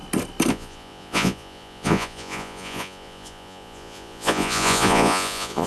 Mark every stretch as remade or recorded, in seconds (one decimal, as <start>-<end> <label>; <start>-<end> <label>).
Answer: 0.0-0.5 recorded; 0.5-5.7 remade